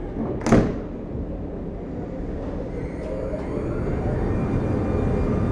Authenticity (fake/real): real